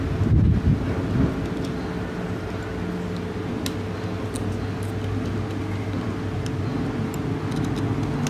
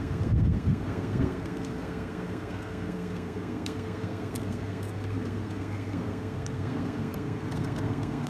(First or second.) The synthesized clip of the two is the second